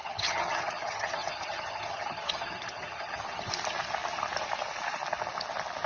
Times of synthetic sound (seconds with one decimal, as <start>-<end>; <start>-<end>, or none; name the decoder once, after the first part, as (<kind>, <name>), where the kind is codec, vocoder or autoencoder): 0.0-3.5 (vocoder, HiFi-GAN)